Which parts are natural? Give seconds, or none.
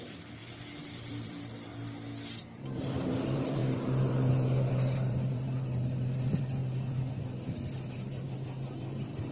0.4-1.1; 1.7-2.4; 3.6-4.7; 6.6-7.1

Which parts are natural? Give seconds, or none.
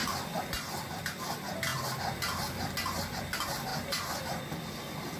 0.0-3.7; 4.4-5.2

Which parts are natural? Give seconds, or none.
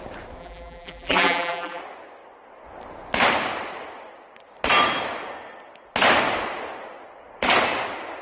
0.0-0.4; 1.8-8.2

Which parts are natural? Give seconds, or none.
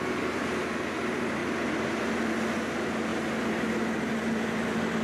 0.0-1.4; 2.2-5.0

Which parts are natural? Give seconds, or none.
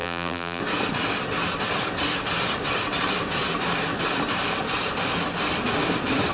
0.6-6.3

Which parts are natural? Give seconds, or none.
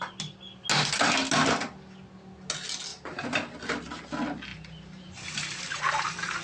0.0-6.4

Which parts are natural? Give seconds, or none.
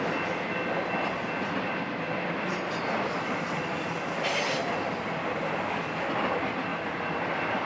0.0-6.7; 7.2-7.7